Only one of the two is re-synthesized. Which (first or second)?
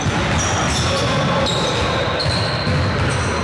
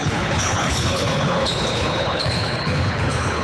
second